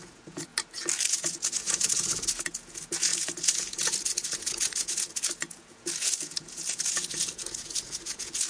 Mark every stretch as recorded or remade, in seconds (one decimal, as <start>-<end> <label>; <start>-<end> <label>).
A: 0.0-0.5 remade; 0.5-1.1 recorded; 1.1-8.5 remade